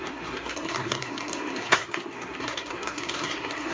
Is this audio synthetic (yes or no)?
yes